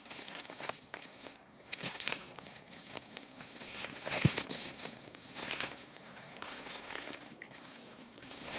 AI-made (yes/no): yes